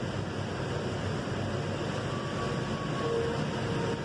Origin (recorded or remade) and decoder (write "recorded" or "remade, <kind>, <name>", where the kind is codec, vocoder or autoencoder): recorded